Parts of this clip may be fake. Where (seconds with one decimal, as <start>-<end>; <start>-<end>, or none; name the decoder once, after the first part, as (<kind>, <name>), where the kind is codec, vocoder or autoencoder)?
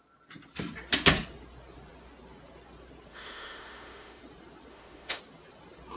3.1-4.2 (autoencoder, DAC-VAE); 4.7-5.2